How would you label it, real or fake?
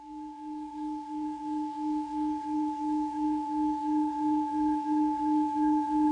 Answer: fake